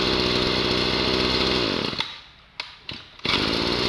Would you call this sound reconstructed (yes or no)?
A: no